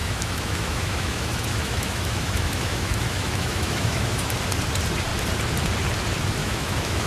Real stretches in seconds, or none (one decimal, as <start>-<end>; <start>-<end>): 4.3-6.4